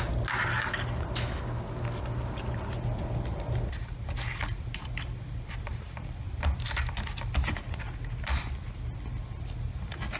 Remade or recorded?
recorded